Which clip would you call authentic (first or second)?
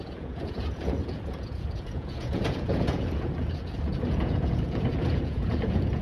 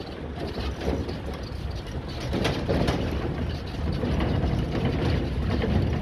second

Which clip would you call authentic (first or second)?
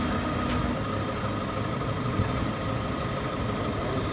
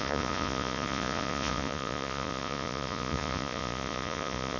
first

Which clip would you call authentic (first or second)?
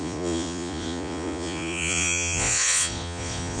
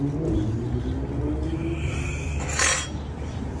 second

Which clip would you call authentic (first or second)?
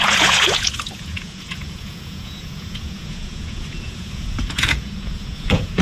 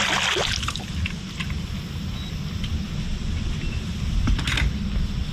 second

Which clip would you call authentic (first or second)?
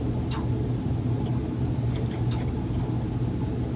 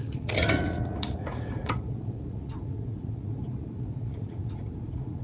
first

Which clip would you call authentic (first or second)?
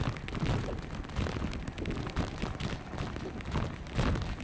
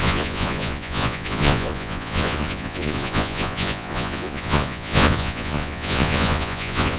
first